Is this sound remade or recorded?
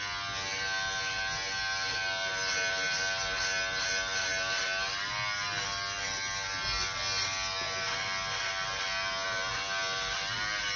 recorded